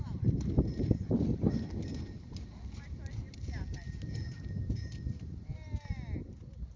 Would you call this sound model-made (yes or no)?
no